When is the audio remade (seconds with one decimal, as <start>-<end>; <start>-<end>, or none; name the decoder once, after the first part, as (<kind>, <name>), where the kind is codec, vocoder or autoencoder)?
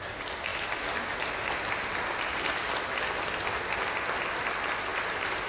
none